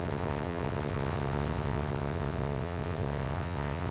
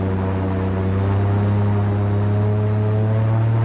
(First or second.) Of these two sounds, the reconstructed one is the first